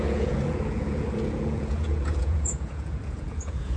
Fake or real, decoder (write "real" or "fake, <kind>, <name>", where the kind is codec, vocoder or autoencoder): fake, vocoder, Vocos